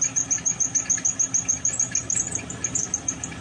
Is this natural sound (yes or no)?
yes